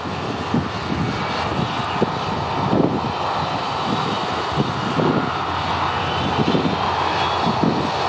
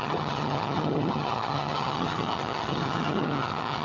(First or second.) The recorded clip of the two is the first